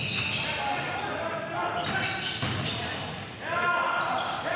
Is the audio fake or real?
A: real